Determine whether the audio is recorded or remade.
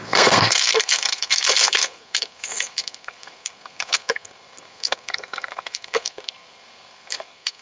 remade